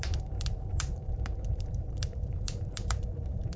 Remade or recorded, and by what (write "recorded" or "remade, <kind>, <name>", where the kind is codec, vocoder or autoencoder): remade, vocoder, BigVGAN v2